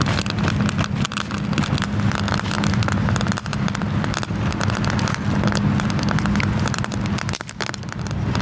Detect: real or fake real